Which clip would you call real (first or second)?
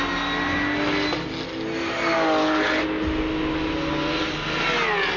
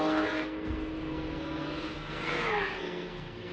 first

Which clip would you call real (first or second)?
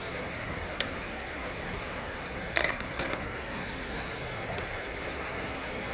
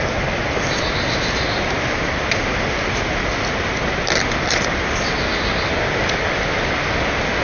second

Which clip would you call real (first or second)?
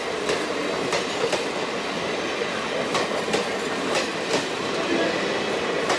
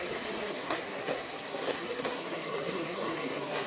first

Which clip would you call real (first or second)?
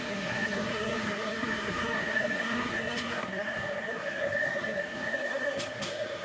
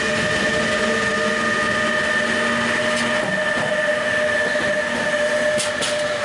second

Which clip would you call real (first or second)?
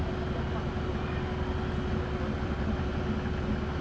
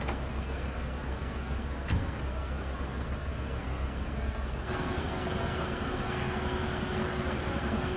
first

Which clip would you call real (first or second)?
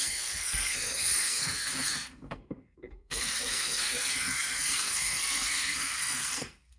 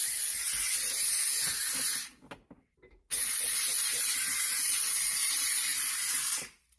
second